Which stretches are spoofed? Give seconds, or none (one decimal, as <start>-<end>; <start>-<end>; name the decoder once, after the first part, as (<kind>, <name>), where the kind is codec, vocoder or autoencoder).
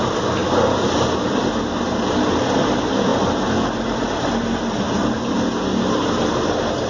none